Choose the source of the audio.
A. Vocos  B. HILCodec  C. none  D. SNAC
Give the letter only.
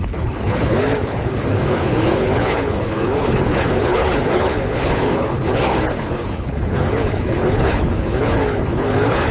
B